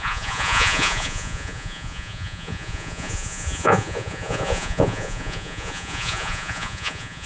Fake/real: fake